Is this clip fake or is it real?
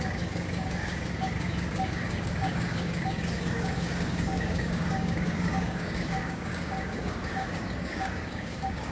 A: fake